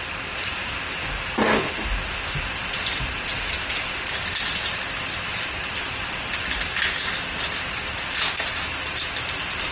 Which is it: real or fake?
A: real